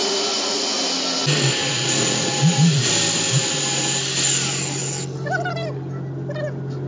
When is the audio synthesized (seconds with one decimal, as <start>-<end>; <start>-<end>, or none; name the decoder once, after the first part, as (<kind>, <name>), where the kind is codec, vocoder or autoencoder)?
0.0-0.7 (vocoder, Vocos); 1.6-2.9